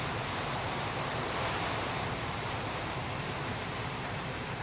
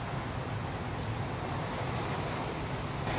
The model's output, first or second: first